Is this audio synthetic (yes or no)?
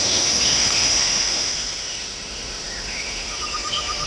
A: yes